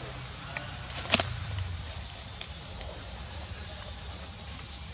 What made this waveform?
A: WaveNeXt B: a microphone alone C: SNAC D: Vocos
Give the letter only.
B